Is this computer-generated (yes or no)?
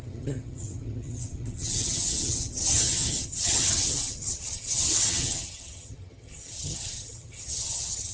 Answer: yes